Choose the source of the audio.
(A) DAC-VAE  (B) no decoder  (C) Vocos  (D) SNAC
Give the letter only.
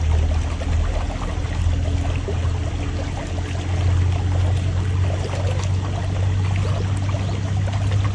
B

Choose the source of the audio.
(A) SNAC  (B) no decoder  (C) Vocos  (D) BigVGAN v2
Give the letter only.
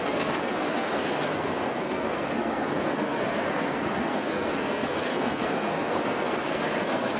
A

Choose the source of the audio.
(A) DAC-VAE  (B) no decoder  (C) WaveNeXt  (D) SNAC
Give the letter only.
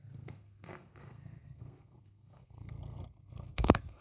D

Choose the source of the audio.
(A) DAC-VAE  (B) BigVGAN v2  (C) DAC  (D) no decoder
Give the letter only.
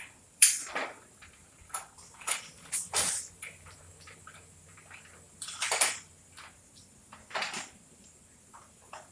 B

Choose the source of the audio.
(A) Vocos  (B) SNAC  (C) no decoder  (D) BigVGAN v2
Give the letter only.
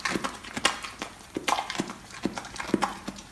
C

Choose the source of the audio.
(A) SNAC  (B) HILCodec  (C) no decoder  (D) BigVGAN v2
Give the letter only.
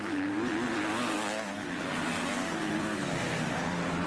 C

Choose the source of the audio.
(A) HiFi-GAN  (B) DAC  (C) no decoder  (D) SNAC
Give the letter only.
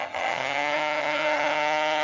A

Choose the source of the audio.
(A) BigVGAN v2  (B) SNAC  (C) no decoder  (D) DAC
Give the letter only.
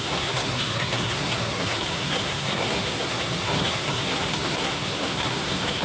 B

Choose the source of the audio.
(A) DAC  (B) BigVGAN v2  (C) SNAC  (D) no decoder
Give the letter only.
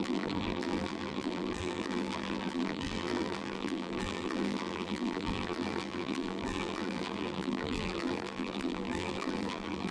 B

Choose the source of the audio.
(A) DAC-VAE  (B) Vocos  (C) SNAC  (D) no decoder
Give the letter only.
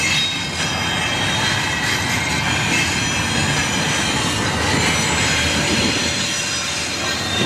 D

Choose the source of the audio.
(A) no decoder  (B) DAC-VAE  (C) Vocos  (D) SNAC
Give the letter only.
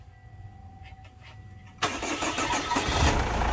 A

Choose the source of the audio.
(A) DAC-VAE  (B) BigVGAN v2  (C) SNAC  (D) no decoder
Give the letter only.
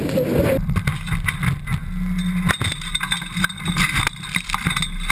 D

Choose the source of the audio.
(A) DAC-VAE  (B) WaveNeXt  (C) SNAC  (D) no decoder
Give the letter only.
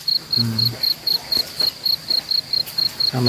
D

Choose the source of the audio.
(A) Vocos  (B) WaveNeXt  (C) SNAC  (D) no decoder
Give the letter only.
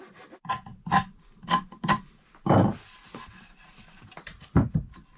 D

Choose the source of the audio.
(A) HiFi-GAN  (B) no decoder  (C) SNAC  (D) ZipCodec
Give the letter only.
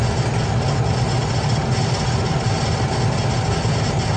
B